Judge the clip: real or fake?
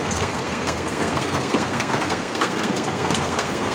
fake